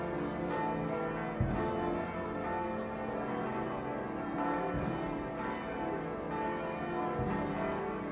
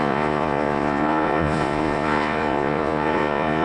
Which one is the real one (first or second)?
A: first